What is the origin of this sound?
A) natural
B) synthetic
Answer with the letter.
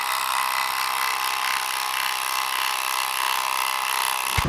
A